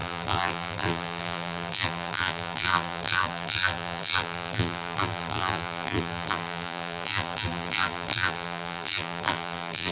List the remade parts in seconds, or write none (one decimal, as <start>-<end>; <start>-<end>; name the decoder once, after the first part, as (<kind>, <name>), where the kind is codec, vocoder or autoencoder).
0.0-9.9 (vocoder, BigVGAN v2)